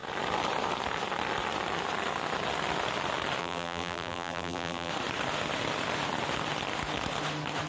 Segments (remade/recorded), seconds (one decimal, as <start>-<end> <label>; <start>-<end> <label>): 0.0-3.4 recorded; 3.4-4.9 remade; 4.9-7.7 recorded